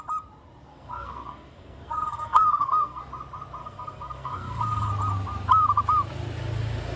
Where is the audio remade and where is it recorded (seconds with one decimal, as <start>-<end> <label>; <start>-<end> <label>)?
0.0-0.7 recorded; 0.7-3.0 remade; 3.0-3.6 recorded; 3.6-4.9 remade; 4.9-7.0 recorded